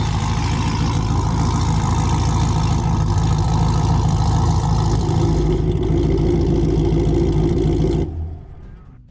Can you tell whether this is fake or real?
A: fake